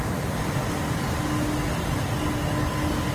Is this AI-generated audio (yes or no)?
no